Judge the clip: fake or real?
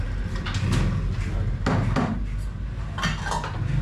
real